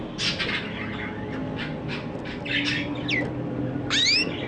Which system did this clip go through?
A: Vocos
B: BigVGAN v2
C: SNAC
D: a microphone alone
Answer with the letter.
D